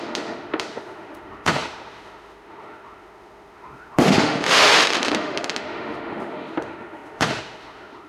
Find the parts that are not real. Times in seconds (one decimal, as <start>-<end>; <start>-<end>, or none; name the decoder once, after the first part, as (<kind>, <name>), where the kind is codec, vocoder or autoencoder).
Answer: 0.0-8.1 (autoencoder, DAC-VAE)